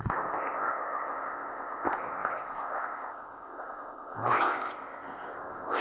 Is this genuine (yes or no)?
no